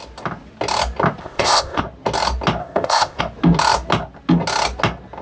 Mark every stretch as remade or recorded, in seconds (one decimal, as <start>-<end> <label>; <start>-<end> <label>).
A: 0.0-1.2 recorded; 1.2-1.8 remade; 1.8-2.6 recorded; 2.6-3.2 remade; 3.2-5.2 recorded